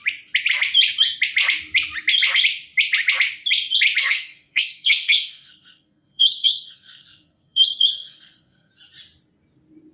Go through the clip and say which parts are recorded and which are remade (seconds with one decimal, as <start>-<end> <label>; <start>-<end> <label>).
0.0-4.0 recorded; 4.0-8.7 remade; 8.7-9.9 recorded